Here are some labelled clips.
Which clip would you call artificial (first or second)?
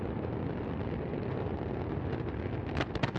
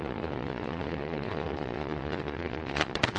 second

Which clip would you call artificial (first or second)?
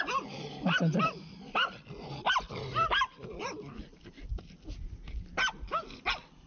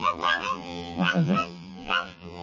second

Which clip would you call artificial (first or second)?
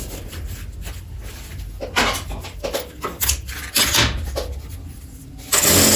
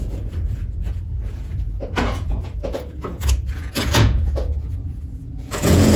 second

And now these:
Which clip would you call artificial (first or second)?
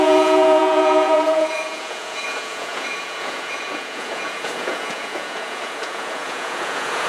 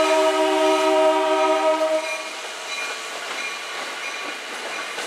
first